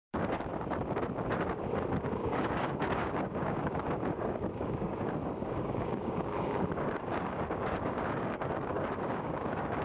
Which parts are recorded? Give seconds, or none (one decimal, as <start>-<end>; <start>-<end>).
0.5-2.0